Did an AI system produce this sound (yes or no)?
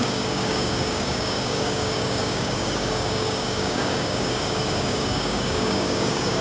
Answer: yes